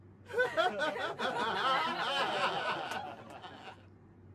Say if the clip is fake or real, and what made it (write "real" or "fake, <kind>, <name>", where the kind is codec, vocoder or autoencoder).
real